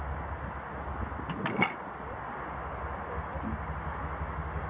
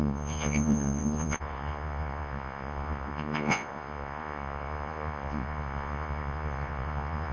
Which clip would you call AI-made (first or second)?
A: second